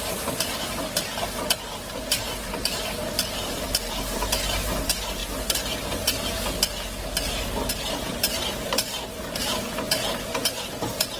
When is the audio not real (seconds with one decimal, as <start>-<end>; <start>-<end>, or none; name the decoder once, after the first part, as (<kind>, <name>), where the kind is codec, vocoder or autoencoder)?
0.0-1.1 (vocoder, BigVGAN v2); 2.0-5.2; 7.7-11.2